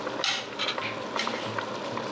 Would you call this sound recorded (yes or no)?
yes